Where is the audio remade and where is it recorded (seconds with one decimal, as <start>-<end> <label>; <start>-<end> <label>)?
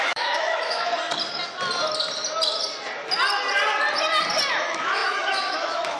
0.0-0.9 remade; 0.9-4.5 recorded; 4.5-6.0 remade